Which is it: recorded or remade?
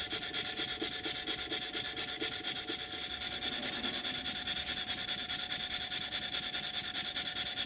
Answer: recorded